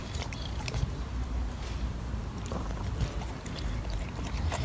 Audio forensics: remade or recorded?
remade